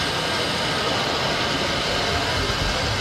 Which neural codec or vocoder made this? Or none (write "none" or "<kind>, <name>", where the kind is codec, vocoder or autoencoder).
none